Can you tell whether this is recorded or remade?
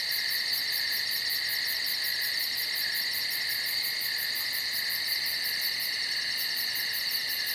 recorded